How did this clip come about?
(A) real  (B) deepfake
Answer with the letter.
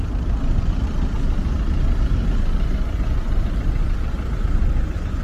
A